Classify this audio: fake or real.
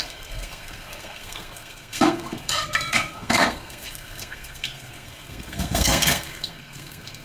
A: fake